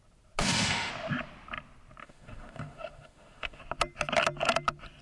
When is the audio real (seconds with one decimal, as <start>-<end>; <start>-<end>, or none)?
0.0-0.4; 0.9-2.0; 3.6-5.0